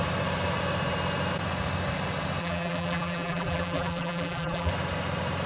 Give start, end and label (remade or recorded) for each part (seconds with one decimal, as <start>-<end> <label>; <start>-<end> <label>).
0.0-2.4 recorded; 2.4-4.7 remade; 4.7-5.5 recorded